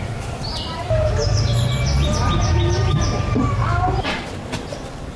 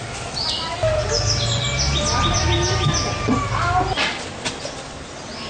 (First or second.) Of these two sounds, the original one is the second